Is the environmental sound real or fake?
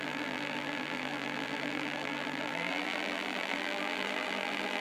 fake